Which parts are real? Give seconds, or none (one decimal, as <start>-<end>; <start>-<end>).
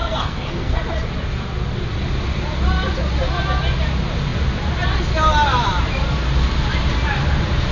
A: 0.8-7.7